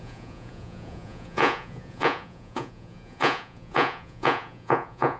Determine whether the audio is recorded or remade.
remade